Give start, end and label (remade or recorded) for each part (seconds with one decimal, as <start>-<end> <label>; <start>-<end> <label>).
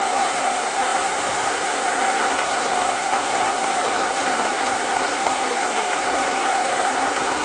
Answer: 0.0-7.4 remade